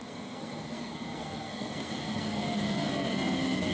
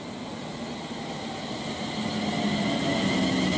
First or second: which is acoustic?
second